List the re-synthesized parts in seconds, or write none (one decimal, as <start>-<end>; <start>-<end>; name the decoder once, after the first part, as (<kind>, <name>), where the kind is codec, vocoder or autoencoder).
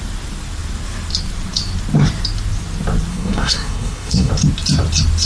3.1-4.3 (codec, SNAC)